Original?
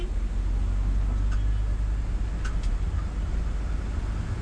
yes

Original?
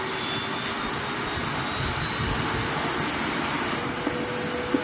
yes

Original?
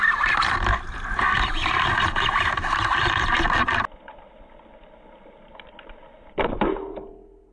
no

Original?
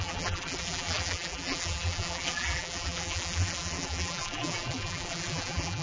no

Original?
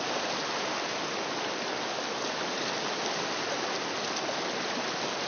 yes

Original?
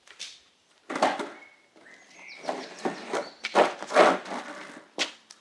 yes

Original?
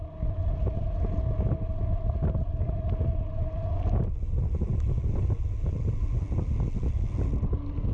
yes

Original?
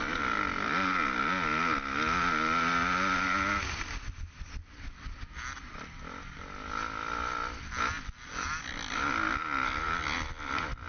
yes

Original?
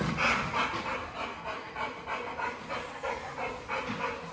yes